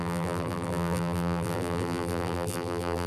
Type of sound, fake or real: fake